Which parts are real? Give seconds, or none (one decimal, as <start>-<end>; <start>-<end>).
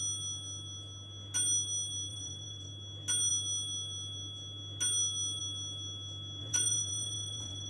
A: 0.0-2.1; 2.7-6.4